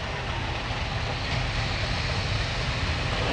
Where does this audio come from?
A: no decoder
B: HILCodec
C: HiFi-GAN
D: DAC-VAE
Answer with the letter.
A